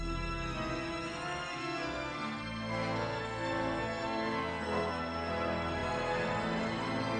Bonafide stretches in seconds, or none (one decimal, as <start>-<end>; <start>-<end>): 0.0-1.6; 5.3-7.2